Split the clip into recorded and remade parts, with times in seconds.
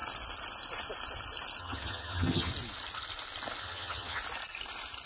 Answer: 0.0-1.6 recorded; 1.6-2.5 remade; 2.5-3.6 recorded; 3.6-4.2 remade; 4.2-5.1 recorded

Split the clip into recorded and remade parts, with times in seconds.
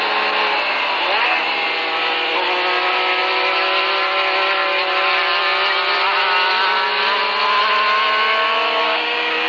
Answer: 0.0-8.8 recorded; 8.8-9.5 remade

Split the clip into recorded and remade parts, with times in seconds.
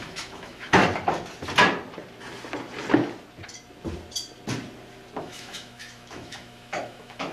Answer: 0.0-0.8 remade; 0.8-5.2 recorded; 5.2-7.3 remade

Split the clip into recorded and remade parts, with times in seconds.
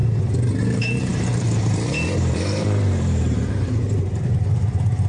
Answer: 0.0-0.6 recorded; 0.6-5.1 remade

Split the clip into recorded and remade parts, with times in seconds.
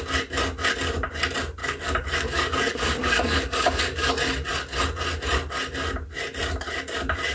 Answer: 0.0-1.6 recorded; 1.6-4.1 remade; 4.1-7.3 recorded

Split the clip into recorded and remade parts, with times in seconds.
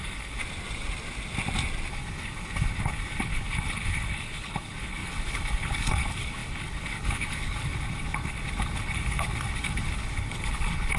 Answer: 0.0-0.4 remade; 0.4-1.9 recorded; 1.9-11.0 remade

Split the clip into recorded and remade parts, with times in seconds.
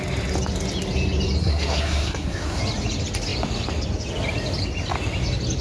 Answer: 0.0-1.4 recorded; 1.4-2.6 remade; 2.6-5.6 recorded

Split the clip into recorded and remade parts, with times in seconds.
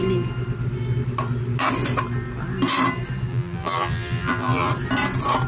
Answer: 0.0-3.3 recorded; 3.3-4.7 remade; 4.7-5.5 recorded